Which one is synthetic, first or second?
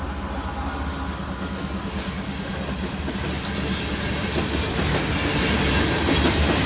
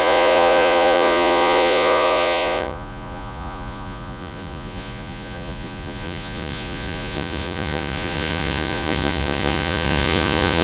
second